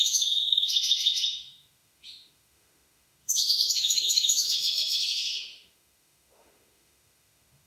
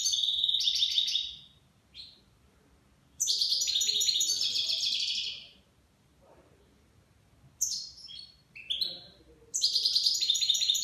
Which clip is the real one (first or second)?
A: second